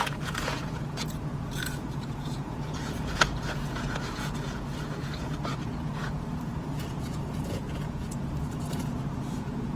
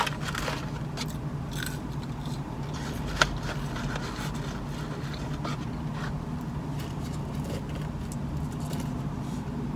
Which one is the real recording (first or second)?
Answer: second